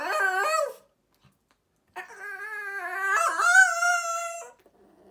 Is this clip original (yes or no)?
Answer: yes